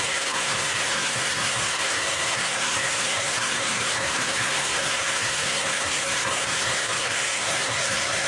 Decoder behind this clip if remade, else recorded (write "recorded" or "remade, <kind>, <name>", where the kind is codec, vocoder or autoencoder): remade, codec, SNAC